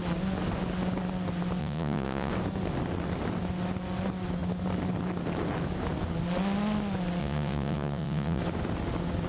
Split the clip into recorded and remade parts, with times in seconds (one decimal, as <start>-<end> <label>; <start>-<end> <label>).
0.0-1.6 recorded; 1.6-2.3 remade; 2.3-7.2 recorded; 7.2-8.4 remade; 8.4-9.3 recorded